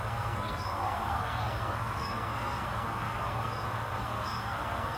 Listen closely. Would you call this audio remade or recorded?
remade